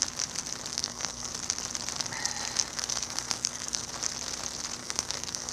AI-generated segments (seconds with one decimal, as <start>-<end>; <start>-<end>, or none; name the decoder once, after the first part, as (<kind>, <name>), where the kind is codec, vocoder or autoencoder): 0.7-1.3 (codec, SNAC); 2.7-3.9; 4.8-5.5